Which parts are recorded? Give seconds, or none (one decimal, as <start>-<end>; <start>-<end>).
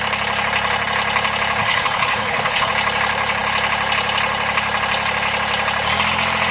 0.0-1.6; 2.7-6.5